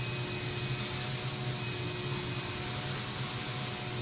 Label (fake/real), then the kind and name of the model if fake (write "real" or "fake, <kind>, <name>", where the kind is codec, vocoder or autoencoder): real